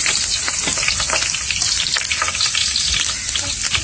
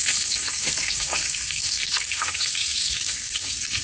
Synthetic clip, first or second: second